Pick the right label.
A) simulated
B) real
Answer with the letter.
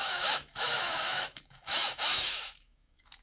A